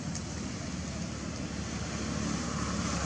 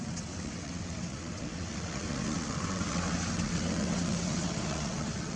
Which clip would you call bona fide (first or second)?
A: first